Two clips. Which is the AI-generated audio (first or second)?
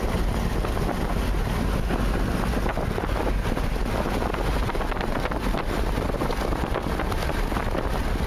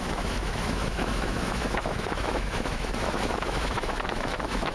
second